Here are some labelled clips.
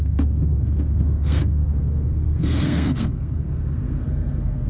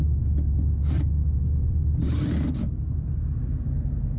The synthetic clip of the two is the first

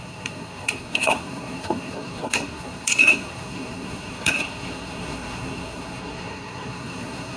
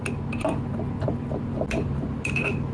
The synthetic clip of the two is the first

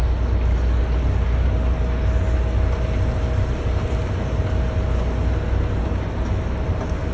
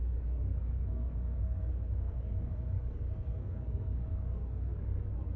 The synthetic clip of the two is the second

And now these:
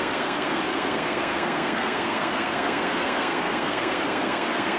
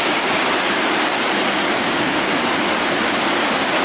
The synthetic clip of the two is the first